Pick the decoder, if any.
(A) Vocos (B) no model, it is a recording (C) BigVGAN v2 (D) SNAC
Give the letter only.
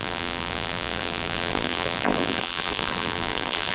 C